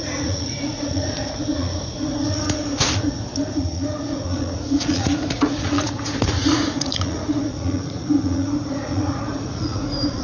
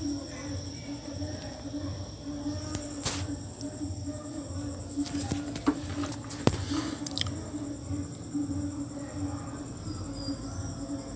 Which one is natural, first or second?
second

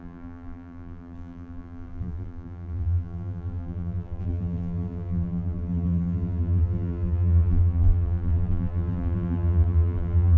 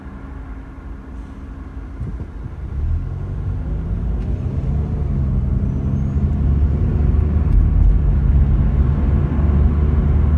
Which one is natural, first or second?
second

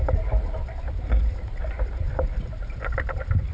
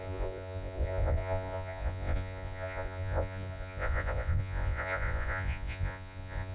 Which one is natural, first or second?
first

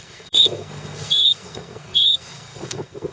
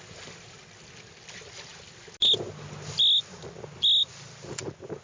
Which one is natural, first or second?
second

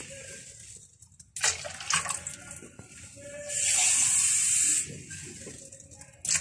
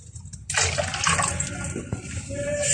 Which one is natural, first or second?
first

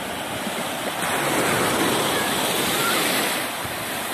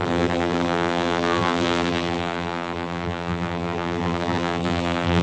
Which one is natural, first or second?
first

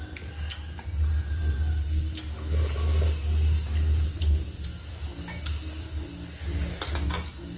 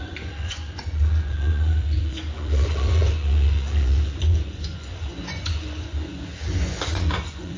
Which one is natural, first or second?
first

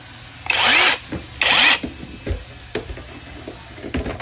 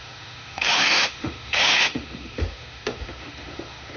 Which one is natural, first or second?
first